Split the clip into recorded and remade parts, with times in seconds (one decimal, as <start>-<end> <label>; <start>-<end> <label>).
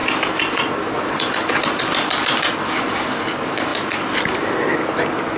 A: 0.0-5.4 recorded